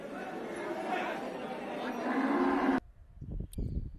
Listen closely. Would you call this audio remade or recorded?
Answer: recorded